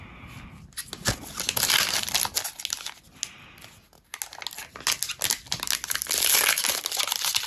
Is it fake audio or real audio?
real